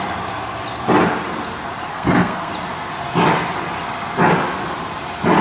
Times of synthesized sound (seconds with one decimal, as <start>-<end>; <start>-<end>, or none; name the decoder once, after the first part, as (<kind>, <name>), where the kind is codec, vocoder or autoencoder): 1.9-2.5 (codec, SNAC)